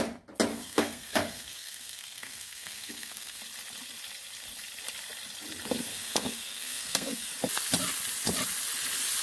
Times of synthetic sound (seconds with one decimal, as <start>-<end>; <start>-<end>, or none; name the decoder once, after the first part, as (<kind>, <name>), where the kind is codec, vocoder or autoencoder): 0.5-3.4 (codec, SNAC); 5.9-7.3